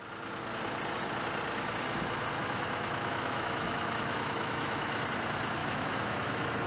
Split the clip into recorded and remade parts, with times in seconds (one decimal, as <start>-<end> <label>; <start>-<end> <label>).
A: 0.0-2.4 recorded; 2.4-5.0 remade; 5.0-5.6 recorded; 5.6-6.7 remade